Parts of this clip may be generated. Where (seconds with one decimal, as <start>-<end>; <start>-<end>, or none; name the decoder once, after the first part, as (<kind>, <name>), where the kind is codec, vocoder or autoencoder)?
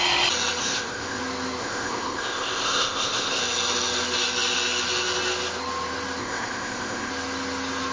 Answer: 0.6-1.2 (codec, ZipCodec); 1.6-3.4; 6.2-7.1